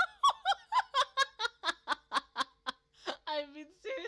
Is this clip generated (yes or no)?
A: no